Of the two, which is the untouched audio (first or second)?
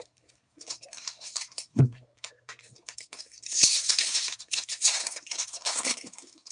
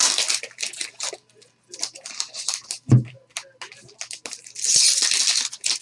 second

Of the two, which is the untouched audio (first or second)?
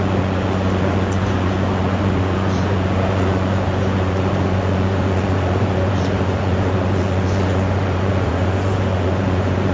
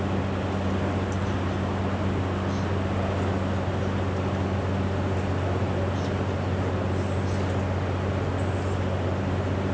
second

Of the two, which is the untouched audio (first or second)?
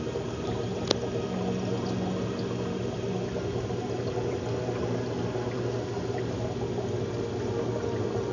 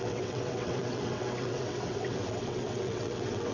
first